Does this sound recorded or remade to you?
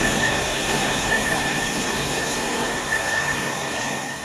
remade